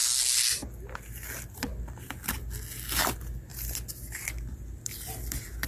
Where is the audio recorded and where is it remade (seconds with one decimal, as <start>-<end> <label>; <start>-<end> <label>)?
0.0-5.7 recorded